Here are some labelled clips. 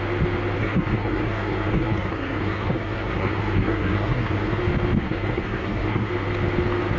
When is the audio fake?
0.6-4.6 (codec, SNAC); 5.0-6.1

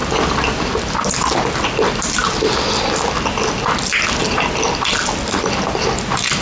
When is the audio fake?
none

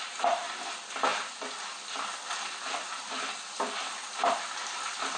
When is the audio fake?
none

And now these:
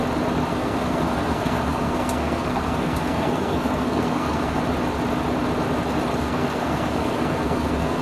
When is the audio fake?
0.5-4.6 (codec, SNAC); 6.2-8.0